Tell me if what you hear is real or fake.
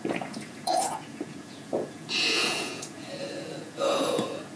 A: fake